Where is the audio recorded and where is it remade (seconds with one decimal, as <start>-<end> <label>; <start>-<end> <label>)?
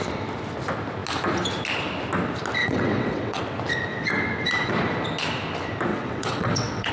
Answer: 0.0-2.6 recorded; 2.6-3.4 remade; 3.4-3.9 recorded; 3.9-4.7 remade; 4.7-5.9 recorded; 5.9-6.9 remade